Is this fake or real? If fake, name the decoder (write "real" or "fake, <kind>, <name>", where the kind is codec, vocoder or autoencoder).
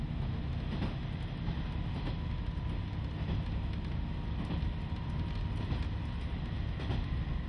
real